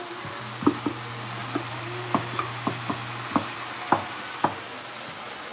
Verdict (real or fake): real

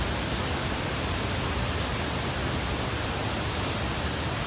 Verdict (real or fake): real